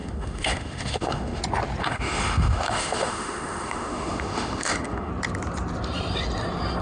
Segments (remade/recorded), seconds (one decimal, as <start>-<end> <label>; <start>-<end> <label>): 0.0-1.4 remade; 1.4-1.8 recorded; 1.8-5.1 remade; 5.1-6.8 recorded